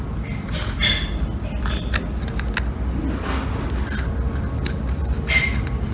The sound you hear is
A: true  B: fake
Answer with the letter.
A